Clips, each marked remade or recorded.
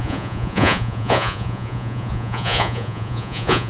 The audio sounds remade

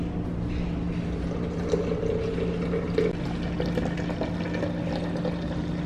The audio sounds recorded